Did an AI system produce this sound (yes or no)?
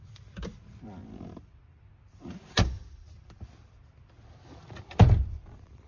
yes